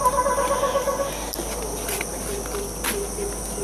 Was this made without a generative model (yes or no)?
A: yes